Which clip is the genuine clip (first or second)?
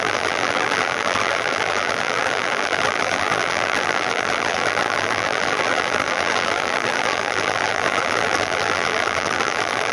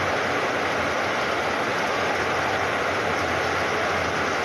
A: second